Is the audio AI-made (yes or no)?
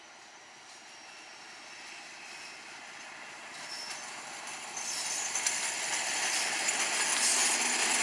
no